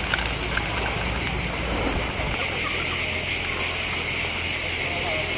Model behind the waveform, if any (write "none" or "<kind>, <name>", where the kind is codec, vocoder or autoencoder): none